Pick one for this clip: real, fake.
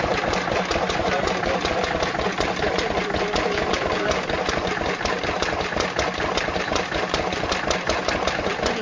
real